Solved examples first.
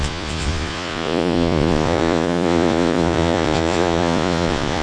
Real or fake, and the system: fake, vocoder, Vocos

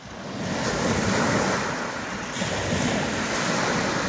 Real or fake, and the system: real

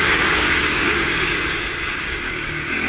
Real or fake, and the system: fake, codec, DAC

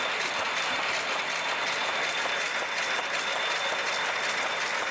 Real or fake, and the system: real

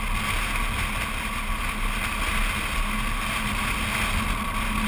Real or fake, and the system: real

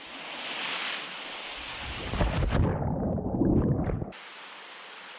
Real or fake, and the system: real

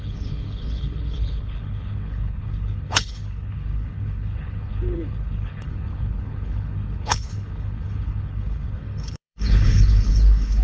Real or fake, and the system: fake, codec, HILCodec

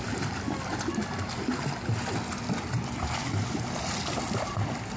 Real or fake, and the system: real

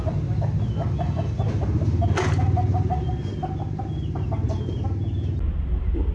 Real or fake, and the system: real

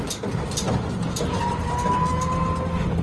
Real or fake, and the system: real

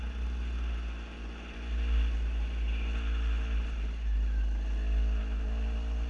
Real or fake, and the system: real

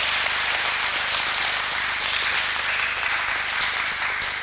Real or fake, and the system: real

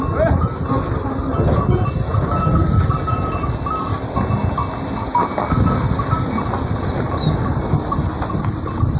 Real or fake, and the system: real